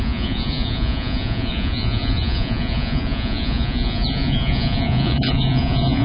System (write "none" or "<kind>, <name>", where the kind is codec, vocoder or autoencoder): vocoder, Vocos